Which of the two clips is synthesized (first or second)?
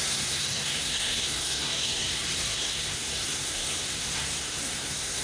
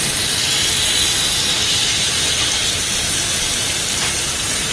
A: first